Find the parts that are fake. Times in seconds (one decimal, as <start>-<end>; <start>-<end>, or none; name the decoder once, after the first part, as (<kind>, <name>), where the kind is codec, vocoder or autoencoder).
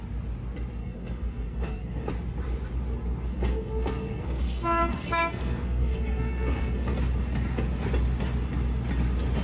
0.8-2.1 (codec, SNAC); 3.3-7.0